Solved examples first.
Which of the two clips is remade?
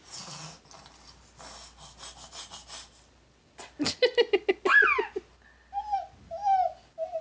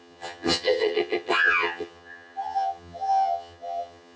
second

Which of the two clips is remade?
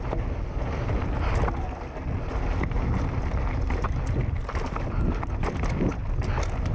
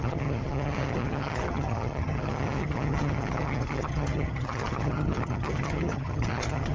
second